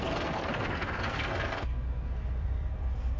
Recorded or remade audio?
remade